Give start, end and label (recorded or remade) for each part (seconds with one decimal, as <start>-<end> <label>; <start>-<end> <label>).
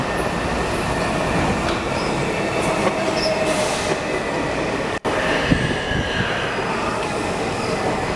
0.0-4.5 recorded; 4.5-5.0 remade; 5.0-6.7 recorded; 6.7-8.2 remade